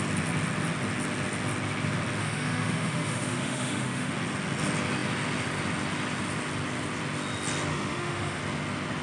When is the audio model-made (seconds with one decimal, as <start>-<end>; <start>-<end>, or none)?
2.2-4.1; 7.7-8.4